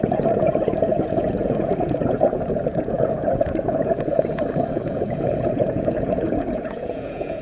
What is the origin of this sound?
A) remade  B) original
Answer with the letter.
A